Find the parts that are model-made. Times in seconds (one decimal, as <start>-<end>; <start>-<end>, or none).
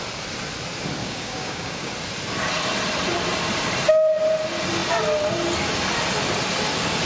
1.0-1.9